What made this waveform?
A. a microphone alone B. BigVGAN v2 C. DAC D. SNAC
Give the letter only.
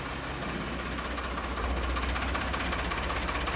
A